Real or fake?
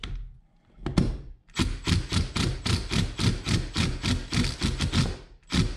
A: real